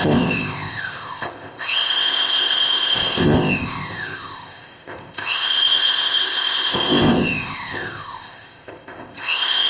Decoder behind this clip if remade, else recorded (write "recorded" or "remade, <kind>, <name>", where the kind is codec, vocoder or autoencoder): remade, codec, ZipCodec